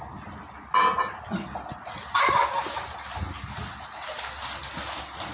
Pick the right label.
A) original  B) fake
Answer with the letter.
A